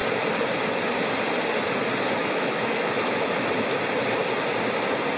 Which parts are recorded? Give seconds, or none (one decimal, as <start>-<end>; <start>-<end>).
0.0-2.2; 3.5-5.2